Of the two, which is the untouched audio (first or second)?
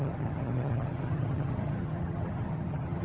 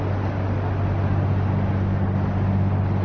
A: second